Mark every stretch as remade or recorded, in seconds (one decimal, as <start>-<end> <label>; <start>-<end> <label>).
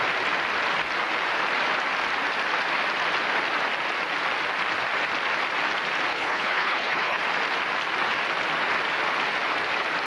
0.0-6.1 recorded; 6.1-7.2 remade; 7.2-10.1 recorded